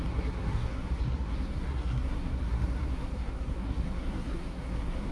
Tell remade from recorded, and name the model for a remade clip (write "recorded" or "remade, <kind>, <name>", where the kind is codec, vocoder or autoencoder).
remade, codec, SNAC